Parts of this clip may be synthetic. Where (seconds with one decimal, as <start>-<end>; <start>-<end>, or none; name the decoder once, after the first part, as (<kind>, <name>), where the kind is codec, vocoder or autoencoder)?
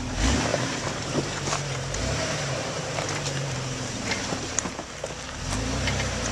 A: 0.5-4.3 (vocoder, BigVGAN v2)